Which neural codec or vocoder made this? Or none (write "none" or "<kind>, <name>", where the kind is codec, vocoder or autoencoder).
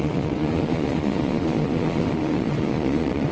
vocoder, Vocos